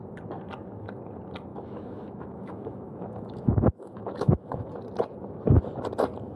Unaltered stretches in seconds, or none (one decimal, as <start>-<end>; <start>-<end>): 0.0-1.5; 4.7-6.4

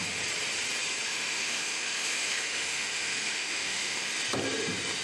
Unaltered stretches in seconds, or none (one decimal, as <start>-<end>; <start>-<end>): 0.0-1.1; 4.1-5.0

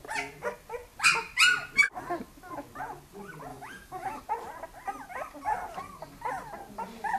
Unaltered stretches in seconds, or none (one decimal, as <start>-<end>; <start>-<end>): 0.0-3.5; 4.2-7.2

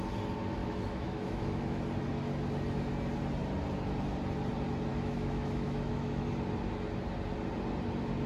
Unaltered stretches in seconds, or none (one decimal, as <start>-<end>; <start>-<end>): 0.0-0.6; 1.8-4.9; 6.3-8.3

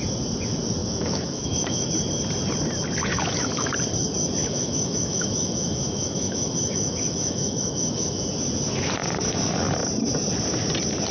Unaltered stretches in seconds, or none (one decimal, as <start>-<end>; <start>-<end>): 0.0-0.8; 1.9-3.1; 3.7-4.4; 8.3-11.1

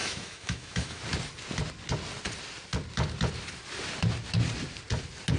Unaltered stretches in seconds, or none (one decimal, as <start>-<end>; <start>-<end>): 1.0-5.4

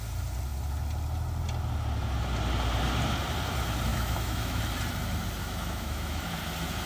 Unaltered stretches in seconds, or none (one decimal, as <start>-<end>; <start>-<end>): 0.0-3.9; 4.6-5.4; 6.3-6.9